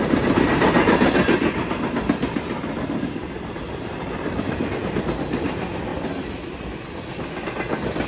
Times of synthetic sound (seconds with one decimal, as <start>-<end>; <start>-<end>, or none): 1.4-8.1